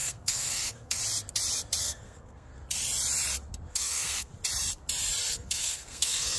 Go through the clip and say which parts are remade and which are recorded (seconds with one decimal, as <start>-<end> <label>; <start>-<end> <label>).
0.0-1.0 remade; 1.0-1.8 recorded; 1.8-2.5 remade; 2.5-3.7 recorded; 3.7-4.3 remade; 4.3-5.3 recorded; 5.3-6.4 remade